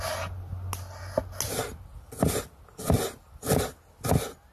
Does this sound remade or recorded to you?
recorded